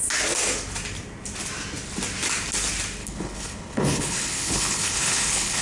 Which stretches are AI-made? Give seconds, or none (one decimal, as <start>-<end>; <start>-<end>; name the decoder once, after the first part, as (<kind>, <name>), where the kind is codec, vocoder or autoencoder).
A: 3.0-5.6 (codec, HILCodec)